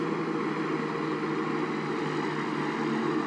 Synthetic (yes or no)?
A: no